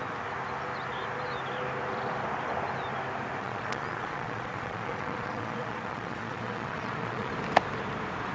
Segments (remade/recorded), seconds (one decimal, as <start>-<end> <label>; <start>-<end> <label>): 0.0-3.4 recorded; 3.4-7.3 remade; 7.3-8.3 recorded